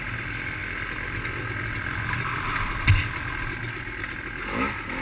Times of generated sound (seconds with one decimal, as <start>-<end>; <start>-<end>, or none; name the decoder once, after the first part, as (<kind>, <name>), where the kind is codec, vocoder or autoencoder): none